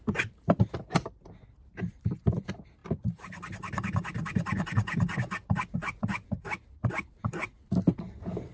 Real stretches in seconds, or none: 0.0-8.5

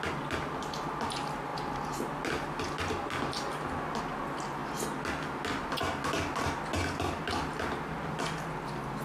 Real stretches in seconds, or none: 0.0-9.0